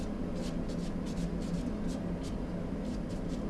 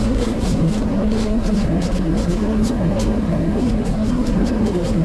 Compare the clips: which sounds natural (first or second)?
first